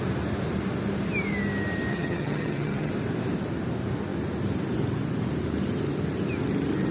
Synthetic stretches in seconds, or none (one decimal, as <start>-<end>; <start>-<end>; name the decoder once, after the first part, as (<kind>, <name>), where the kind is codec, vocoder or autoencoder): 1.9-2.9 (vocoder, HiFi-GAN)